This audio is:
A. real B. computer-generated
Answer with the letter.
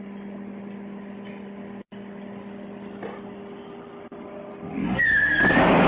A